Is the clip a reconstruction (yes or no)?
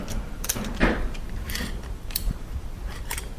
yes